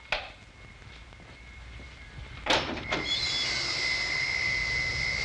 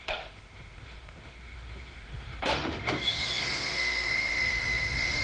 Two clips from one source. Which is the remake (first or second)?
second